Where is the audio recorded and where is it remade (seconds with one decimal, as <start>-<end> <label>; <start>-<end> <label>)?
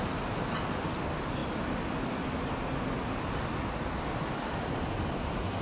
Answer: 0.0-5.6 recorded